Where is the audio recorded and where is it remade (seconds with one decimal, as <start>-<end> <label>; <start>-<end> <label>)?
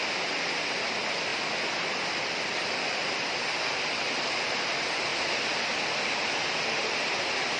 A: 0.0-1.3 remade; 1.3-2.1 recorded; 2.1-5.1 remade; 5.1-6.0 recorded; 6.0-7.6 remade